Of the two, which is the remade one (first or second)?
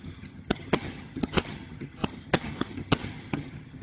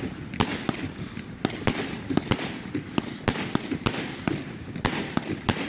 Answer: first